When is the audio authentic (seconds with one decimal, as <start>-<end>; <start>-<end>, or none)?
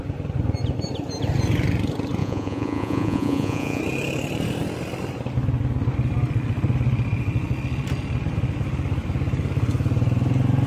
0.0-2.2; 3.8-10.7